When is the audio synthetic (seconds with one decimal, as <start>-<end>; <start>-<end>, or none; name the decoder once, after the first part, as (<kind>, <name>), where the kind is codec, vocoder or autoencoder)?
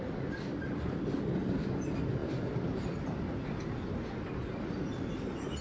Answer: none